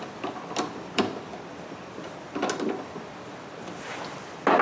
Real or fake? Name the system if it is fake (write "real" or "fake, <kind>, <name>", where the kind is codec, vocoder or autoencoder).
fake, vocoder, BigVGAN v2